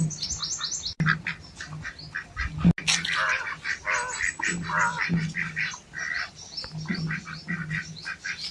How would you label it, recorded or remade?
recorded